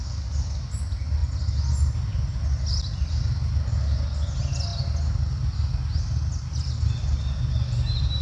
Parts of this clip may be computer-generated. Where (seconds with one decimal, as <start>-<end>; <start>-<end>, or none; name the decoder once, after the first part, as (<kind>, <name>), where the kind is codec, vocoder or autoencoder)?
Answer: none